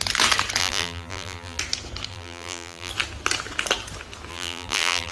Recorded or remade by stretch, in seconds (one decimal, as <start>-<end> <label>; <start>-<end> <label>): 0.0-0.6 recorded; 0.6-1.6 remade; 1.6-2.1 recorded; 2.1-2.9 remade; 2.9-4.3 recorded; 4.3-5.1 remade